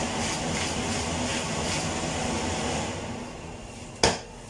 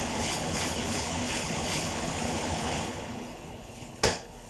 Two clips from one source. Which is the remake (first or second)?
second